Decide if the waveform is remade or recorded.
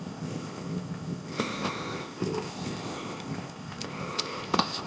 remade